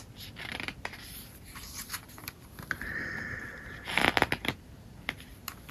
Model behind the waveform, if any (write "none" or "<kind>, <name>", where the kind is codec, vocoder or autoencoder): vocoder, BigVGAN v2